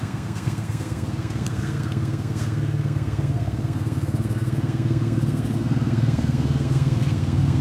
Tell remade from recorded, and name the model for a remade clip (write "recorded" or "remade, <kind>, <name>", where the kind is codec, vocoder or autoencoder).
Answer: remade, codec, SNAC